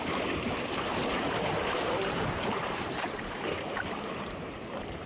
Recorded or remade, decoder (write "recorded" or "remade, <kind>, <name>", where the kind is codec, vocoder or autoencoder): remade, vocoder, BigVGAN v2